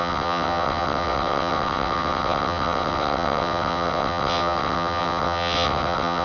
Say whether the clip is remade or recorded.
remade